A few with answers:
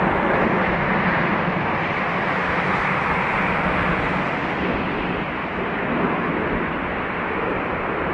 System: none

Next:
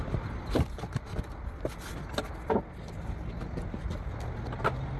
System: none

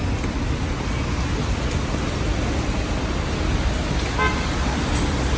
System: none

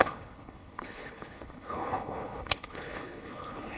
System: codec, HILCodec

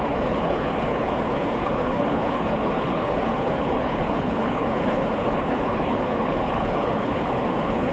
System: codec, HILCodec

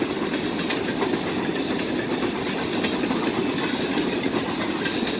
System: none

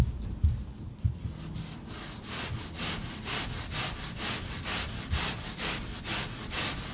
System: none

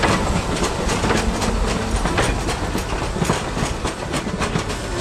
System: none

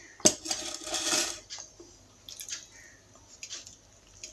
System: none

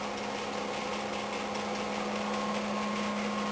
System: none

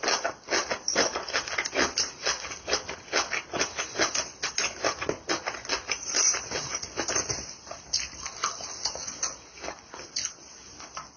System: none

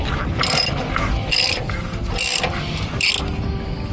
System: none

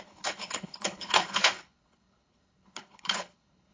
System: codec, HILCodec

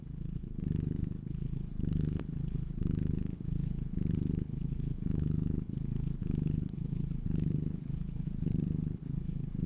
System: codec, HILCodec